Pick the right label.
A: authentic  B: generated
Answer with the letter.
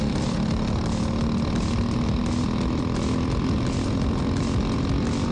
A